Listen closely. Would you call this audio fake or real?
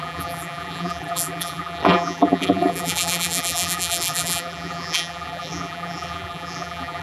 fake